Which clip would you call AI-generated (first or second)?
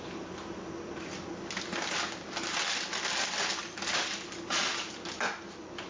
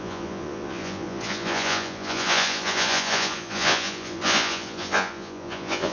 second